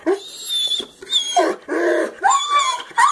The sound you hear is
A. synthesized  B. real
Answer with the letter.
B